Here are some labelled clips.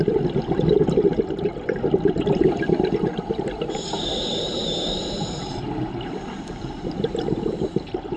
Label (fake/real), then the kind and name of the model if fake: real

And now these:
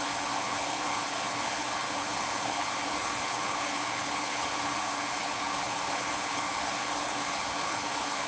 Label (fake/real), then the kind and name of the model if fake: fake, codec, HILCodec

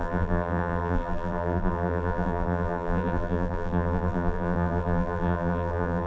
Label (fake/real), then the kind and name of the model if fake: fake, vocoder, BigVGAN v2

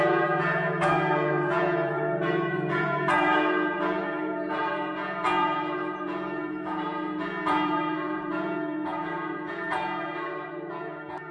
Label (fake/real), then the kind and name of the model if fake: fake, vocoder, Vocos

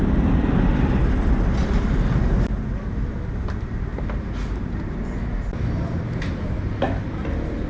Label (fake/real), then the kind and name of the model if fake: real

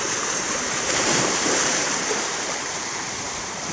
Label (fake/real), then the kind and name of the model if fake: fake, vocoder, BigVGAN v2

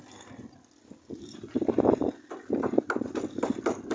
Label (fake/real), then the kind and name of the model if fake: real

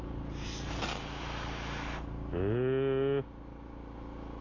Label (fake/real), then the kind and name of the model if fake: real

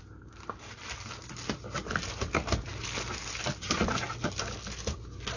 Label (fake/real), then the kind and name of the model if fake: real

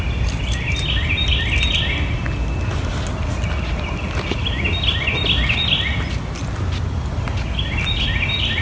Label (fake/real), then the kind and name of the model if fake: real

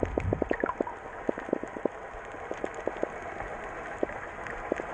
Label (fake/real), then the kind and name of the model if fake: real